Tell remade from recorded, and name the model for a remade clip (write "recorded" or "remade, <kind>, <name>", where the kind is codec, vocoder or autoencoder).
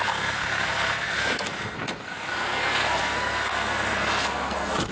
remade, codec, SNAC